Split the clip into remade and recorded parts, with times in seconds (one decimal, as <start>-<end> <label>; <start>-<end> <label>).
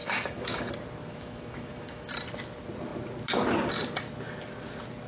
0.0-0.7 remade; 0.7-1.1 recorded; 1.1-2.1 remade; 2.1-5.1 recorded